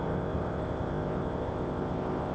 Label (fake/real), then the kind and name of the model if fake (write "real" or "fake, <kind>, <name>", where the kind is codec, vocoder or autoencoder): fake, codec, ZipCodec